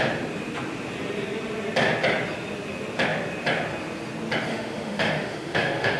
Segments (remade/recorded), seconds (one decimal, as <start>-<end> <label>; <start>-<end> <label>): 0.0-4.5 recorded; 4.5-6.0 remade